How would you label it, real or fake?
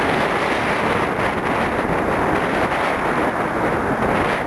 real